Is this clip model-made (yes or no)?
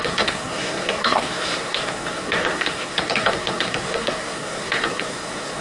yes